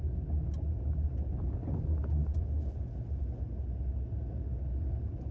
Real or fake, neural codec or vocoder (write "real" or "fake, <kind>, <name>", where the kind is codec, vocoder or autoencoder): real